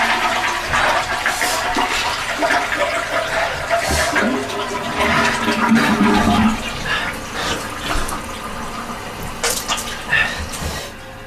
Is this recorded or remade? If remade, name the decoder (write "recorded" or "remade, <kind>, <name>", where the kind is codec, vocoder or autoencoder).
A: recorded